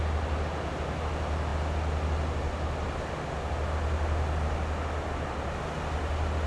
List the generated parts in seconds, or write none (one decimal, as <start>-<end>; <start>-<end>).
none